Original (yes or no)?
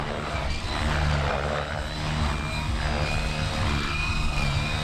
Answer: yes